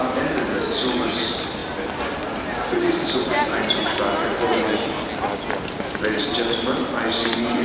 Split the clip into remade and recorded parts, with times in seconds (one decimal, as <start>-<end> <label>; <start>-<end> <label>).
0.0-7.6 recorded